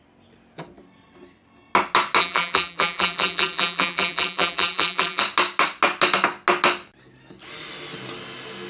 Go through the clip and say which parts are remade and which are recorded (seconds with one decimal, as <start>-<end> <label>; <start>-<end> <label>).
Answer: 0.0-2.2 recorded; 2.2-5.2 remade; 5.2-8.7 recorded